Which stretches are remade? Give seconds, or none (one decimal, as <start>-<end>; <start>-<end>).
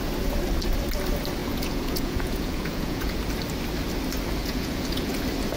1.4-3.2; 4.4-5.1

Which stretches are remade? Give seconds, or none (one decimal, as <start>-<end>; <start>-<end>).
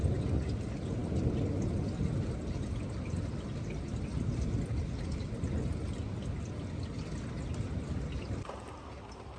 none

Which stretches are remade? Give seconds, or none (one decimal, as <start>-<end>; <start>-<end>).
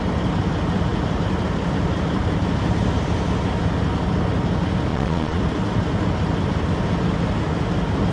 4.9-5.4